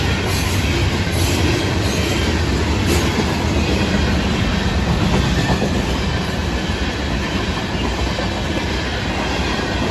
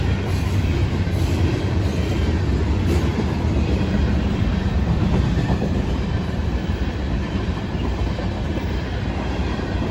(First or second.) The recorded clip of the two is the first